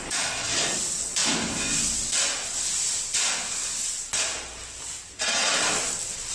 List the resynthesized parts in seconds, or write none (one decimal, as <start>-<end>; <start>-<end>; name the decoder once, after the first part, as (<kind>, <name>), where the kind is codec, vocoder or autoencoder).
none